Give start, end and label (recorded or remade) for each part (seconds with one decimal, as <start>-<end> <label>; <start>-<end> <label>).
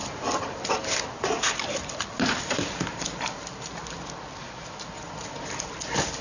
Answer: 0.0-6.2 recorded